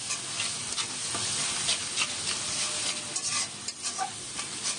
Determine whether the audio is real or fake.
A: real